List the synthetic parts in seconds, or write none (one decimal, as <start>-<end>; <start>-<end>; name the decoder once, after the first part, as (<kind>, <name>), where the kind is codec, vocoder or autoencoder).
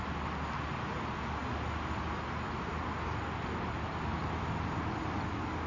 none